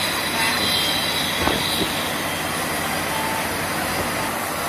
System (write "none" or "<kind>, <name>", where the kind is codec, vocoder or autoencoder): vocoder, BigVGAN v2